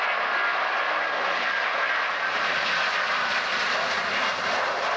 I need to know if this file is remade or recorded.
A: recorded